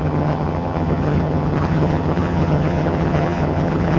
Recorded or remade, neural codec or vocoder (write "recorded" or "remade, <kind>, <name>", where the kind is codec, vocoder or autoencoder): remade, vocoder, HiFi-GAN